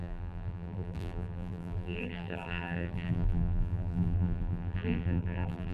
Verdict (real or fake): fake